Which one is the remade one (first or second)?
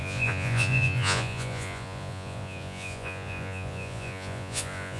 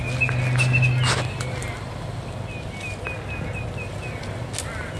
first